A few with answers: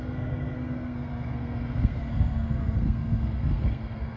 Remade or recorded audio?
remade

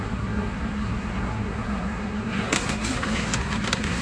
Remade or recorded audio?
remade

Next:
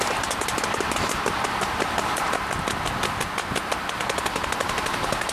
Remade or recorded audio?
recorded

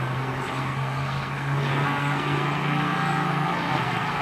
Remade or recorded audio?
remade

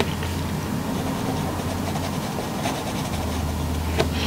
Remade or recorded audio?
recorded